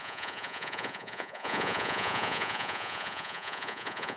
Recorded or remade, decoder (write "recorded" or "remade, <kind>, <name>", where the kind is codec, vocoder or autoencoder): remade, vocoder, Vocos